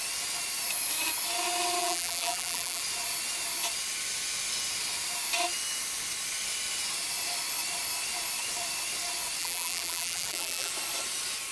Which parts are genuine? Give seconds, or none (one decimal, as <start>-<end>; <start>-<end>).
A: 0.0-1.8; 2.8-9.4; 10.7-11.5